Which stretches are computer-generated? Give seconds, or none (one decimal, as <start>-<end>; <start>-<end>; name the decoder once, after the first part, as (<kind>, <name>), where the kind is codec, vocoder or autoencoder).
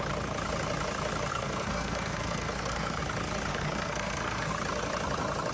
1.3-3.0 (codec, SNAC); 3.5-4.5